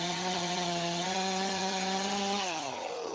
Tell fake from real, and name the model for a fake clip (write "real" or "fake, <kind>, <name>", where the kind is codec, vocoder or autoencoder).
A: fake, vocoder, HiFi-GAN